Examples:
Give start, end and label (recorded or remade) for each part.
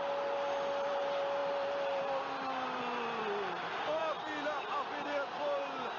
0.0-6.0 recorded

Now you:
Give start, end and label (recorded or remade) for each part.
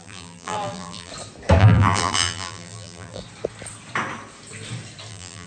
0.0-1.1 remade; 1.1-1.6 recorded; 1.6-3.2 remade; 3.2-5.1 recorded; 5.1-5.5 remade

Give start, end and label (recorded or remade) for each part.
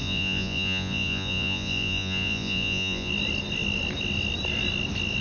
0.0-3.1 remade; 3.1-5.2 recorded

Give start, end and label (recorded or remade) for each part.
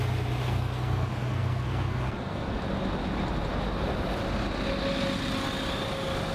0.0-0.4 recorded; 0.4-2.6 remade; 2.6-6.3 recorded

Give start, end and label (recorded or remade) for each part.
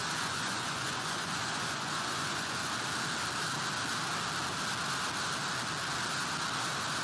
0.0-2.7 remade; 2.7-7.0 recorded